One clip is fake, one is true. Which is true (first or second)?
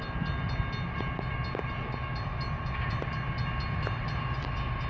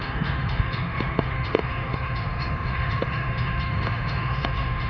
first